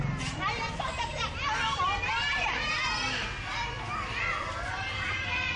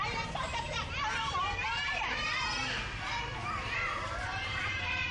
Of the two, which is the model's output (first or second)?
second